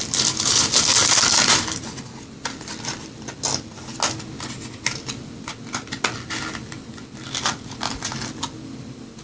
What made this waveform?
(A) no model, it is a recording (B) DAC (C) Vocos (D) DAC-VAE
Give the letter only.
A